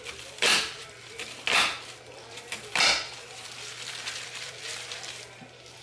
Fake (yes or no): yes